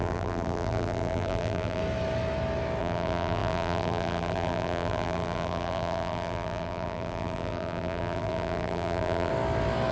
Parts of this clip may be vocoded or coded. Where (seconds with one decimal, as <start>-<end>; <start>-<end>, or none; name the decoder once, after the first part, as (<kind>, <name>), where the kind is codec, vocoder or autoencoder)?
0.0-1.8 (vocoder, BigVGAN v2); 2.8-9.3